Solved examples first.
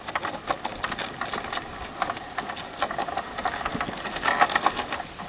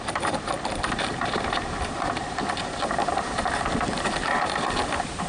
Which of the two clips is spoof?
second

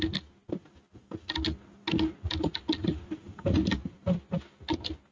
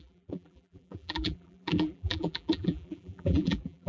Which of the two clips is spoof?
second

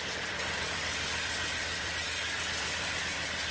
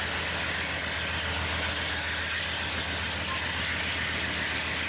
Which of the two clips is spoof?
first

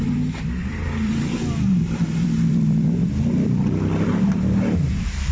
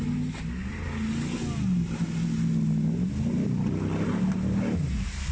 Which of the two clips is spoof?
first